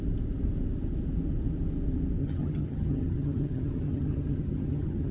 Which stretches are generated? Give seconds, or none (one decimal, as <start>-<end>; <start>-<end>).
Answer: 2.2-5.1